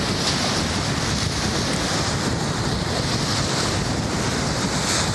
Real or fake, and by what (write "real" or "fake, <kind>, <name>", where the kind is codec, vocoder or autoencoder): real